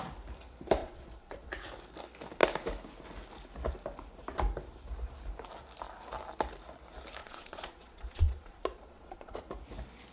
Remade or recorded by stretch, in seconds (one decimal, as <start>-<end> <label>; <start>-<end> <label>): 0.0-0.8 recorded; 0.8-1.5 remade; 1.5-7.2 recorded; 7.2-9.4 remade; 9.4-10.1 recorded